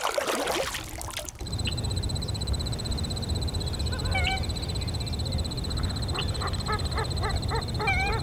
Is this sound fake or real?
fake